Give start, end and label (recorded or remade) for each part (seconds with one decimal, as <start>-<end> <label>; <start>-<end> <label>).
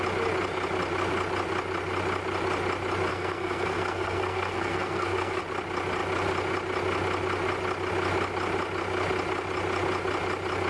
0.0-3.1 recorded; 3.1-5.4 remade; 5.4-10.7 recorded